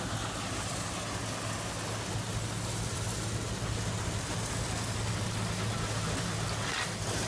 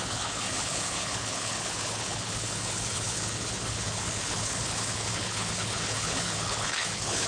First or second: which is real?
first